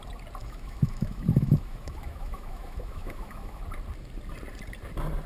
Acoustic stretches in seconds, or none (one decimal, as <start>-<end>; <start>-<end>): 0.0-0.4; 3.6-5.3